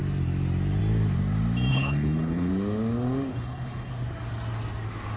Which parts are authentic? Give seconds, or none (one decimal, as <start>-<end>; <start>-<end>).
0.0-1.7; 2.5-3.3; 3.9-5.2